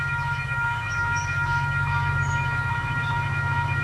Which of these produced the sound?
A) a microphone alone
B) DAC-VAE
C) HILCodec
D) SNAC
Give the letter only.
B